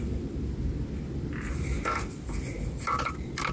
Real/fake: real